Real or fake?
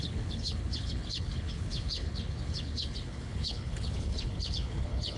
fake